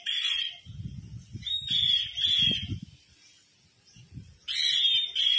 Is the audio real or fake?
real